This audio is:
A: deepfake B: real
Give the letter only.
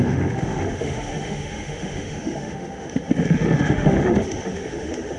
A